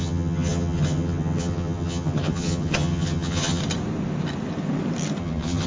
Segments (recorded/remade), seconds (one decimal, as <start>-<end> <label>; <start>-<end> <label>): 0.0-3.6 remade; 3.6-5.2 recorded; 5.2-5.7 remade

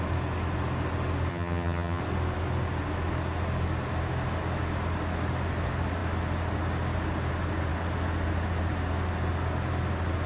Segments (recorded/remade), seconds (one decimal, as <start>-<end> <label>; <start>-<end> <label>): 0.0-1.3 recorded; 1.3-2.0 remade; 2.0-10.3 recorded

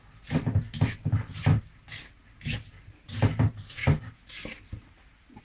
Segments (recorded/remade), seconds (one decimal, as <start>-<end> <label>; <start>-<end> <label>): 0.0-5.4 recorded

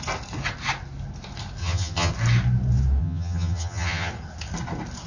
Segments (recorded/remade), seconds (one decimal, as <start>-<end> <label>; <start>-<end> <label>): 0.0-1.6 recorded; 1.6-2.1 remade; 2.1-3.0 recorded; 3.0-4.1 remade; 4.1-5.1 recorded

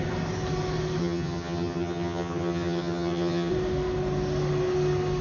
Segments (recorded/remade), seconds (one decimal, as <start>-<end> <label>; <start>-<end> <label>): 0.0-1.0 recorded; 1.0-3.5 remade; 3.5-5.2 recorded